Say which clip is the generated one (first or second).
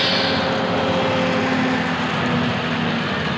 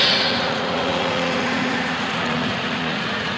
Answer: second